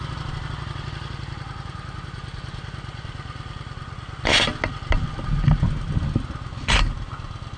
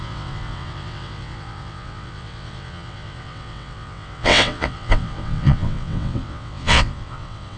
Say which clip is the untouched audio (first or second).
first